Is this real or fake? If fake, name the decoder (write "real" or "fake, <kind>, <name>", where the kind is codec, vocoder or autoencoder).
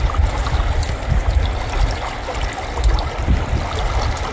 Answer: real